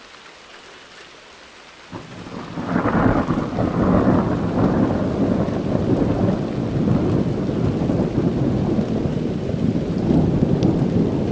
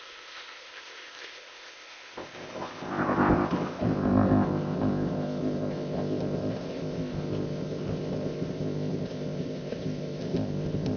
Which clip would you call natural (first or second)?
first